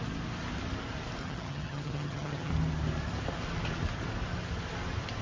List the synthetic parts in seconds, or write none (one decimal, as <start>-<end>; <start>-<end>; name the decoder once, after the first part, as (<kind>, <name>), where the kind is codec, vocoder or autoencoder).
1.2-2.5 (vocoder, HiFi-GAN)